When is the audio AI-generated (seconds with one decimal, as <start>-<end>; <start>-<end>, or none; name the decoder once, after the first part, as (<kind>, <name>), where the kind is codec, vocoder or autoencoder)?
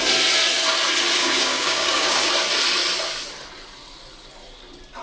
1.2-2.3 (codec, DAC)